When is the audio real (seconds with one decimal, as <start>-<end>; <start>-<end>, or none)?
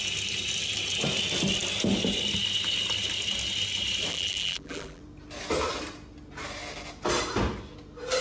0.0-4.1; 5.0-8.2